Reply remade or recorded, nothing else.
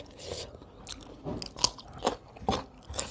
recorded